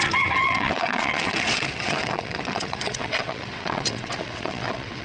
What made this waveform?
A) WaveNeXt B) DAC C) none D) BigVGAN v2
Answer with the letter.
A